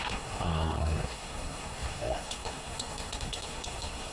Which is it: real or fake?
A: fake